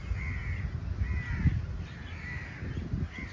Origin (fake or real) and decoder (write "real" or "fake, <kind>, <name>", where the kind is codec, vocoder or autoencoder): real